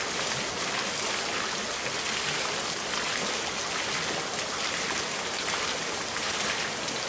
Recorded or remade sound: recorded